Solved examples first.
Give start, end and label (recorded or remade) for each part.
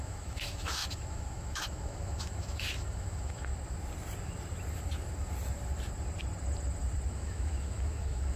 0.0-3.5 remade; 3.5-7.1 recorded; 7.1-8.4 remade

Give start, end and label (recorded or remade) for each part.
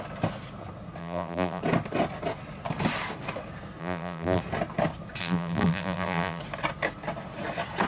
0.0-1.0 recorded; 1.0-1.6 remade; 1.6-3.8 recorded; 3.8-4.4 remade; 4.4-5.2 recorded; 5.2-6.4 remade; 6.4-7.9 recorded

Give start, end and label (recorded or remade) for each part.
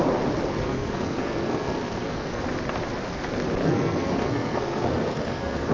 0.0-0.5 recorded; 0.5-2.4 remade; 2.4-3.6 recorded; 3.6-5.7 remade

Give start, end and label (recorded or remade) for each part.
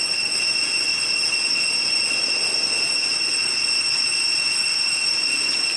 0.0-5.8 recorded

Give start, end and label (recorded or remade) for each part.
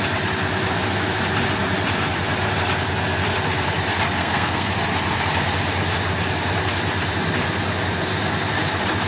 0.0-4.2 recorded; 4.2-4.7 remade; 4.7-9.1 recorded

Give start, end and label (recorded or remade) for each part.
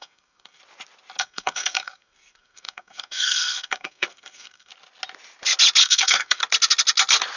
0.0-0.6 remade; 0.6-1.2 recorded; 1.2-4.7 remade; 4.7-5.8 recorded; 5.8-6.4 remade; 6.4-7.4 recorded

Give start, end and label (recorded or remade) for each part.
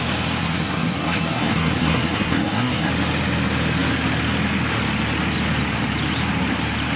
0.0-0.4 recorded; 0.4-2.9 remade; 2.9-7.0 recorded